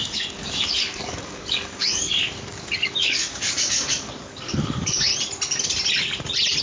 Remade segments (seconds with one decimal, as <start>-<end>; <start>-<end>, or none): 0.0-5.1